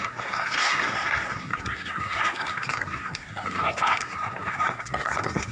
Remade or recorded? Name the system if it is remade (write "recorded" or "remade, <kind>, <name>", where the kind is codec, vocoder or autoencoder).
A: remade, codec, SNAC